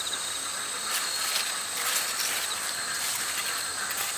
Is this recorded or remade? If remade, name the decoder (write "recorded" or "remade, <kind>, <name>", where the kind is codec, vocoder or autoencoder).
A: recorded